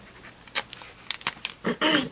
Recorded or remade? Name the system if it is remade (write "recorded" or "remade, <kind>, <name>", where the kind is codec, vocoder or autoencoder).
recorded